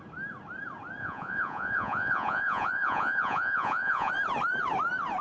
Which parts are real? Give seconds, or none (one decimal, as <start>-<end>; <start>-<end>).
0.0-1.0; 4.1-5.2